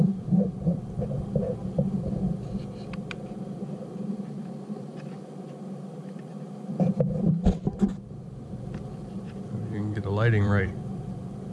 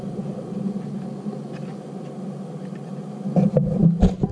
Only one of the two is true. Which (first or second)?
second